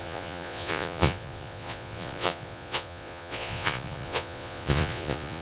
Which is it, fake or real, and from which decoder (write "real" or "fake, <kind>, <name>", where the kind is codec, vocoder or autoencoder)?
fake, vocoder, Vocos